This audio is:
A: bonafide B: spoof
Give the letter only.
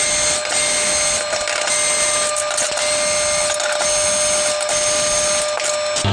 A